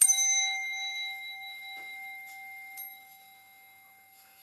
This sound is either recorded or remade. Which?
remade